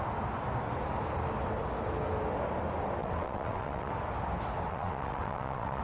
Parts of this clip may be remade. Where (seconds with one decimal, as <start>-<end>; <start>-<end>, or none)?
3.0-3.9; 4.7-5.8